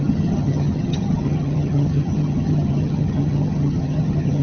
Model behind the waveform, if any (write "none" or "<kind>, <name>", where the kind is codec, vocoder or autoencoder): vocoder, HiFi-GAN